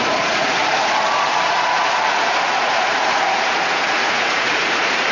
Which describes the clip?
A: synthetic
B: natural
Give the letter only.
A